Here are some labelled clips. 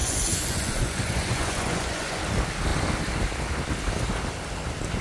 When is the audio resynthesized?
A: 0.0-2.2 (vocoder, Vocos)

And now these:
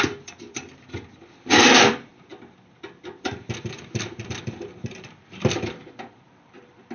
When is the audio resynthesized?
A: 0.0-6.9 (vocoder, BigVGAN v2)

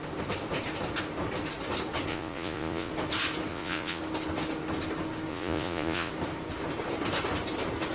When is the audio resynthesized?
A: 2.1-2.9 (vocoder, Vocos); 3.5-4.0; 5.3-6.1

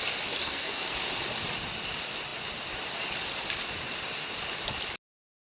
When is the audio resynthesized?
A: 0.4-1.0 (codec, SNAC)